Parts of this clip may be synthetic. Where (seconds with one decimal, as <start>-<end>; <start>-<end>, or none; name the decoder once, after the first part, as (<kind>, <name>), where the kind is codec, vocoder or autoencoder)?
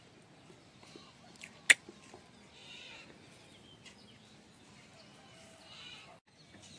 none